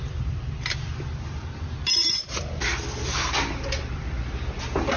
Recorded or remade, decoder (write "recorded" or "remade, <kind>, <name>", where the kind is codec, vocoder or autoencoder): recorded